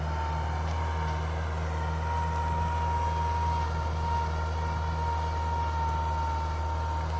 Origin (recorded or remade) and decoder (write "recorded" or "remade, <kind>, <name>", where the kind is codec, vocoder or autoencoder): recorded